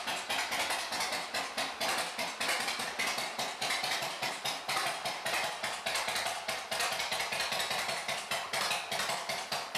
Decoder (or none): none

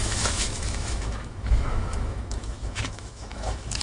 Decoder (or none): autoencoder, DAC-VAE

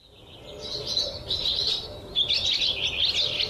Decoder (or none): none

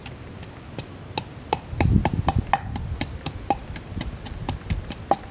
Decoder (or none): none